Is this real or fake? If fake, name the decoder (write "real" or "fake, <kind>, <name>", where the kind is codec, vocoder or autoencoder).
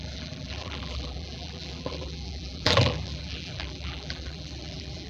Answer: fake, vocoder, BigVGAN v2